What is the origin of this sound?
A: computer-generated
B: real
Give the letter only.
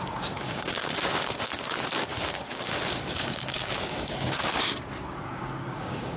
A